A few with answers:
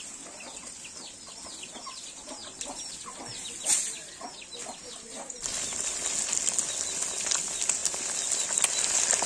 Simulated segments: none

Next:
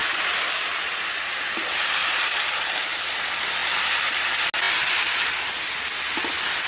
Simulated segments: 0.0-3.2